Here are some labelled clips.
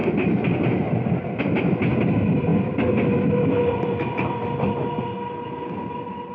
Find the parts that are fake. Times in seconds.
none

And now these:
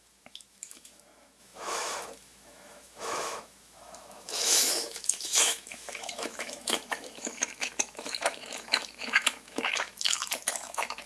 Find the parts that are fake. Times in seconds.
0.0-11.1 (autoencoder, DAC-VAE)

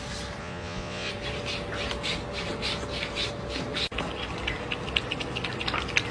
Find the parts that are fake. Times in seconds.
0.4-1.1 (vocoder, Vocos)